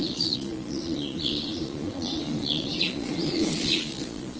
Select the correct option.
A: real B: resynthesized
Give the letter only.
B